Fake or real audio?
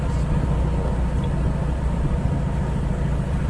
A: real